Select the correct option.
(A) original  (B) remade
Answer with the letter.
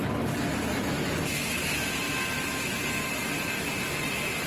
A